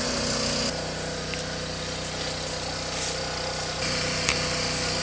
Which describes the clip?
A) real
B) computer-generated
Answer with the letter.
A